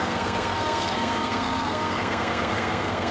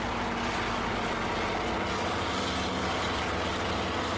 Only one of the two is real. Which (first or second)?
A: second